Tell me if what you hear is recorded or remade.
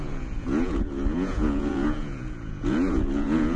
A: remade